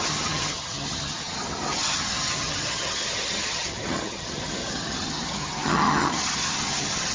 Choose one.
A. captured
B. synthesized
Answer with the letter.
B